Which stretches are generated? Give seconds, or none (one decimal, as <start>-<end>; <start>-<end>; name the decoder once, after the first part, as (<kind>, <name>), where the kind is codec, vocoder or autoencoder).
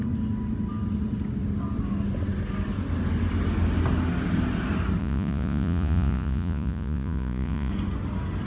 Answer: 5.0-7.7 (vocoder, Vocos)